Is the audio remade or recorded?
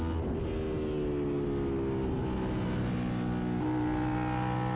recorded